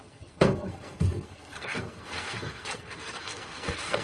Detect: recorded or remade remade